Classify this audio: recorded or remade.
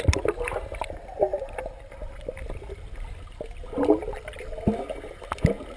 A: recorded